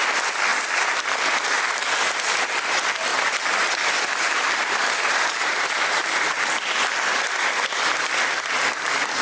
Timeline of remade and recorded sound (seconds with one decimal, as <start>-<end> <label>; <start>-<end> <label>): 0.0-9.2 recorded